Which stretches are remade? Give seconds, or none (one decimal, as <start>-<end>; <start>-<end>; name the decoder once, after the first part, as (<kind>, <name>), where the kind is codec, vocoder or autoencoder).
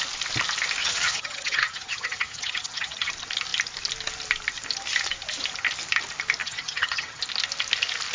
0.8-3.1 (vocoder, HiFi-GAN); 6.4-7.2